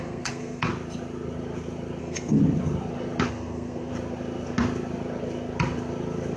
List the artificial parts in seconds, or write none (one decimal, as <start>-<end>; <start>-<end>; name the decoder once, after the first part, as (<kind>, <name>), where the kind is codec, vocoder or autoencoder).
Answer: 0.0-0.7 (codec, SNAC); 2.0-2.4; 3.3-3.9